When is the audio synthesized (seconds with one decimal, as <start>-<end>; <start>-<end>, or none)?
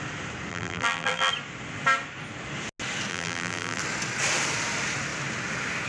0.5-1.3; 3.1-3.8